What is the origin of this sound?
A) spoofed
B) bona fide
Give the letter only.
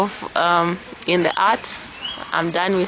B